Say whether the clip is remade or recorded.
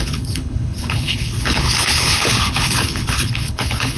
remade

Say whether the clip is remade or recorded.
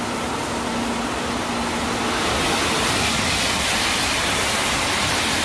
recorded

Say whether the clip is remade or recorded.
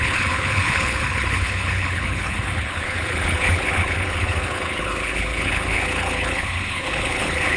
remade